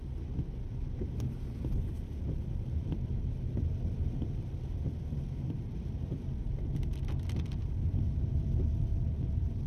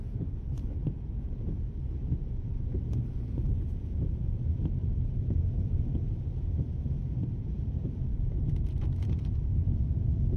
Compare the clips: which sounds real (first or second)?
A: first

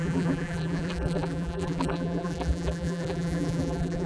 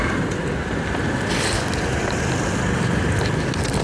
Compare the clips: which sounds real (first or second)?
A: second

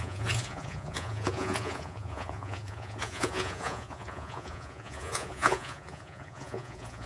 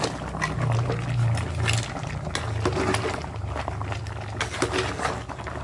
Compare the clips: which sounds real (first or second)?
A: second